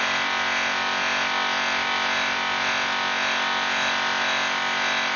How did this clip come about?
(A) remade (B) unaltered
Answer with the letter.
B